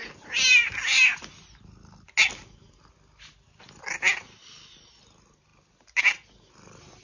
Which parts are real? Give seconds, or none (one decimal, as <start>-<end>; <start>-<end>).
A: 0.0-7.0